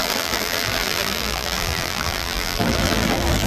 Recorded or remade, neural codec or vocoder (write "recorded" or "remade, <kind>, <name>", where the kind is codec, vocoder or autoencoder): remade, vocoder, BigVGAN v2